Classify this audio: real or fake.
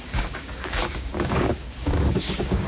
fake